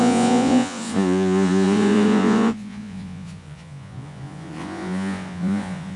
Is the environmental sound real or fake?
fake